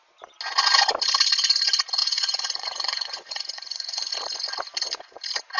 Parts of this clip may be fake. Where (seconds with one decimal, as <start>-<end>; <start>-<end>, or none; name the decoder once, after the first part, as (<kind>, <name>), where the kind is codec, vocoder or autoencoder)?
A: 2.0-4.1 (vocoder, Vocos)